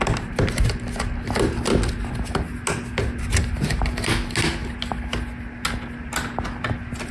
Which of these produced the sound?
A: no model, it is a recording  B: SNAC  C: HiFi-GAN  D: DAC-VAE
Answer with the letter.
A